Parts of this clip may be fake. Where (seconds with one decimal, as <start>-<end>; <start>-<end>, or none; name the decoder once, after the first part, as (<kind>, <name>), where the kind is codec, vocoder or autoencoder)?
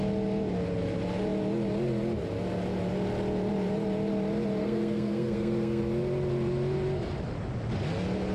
4.6-5.8 (codec, SNAC)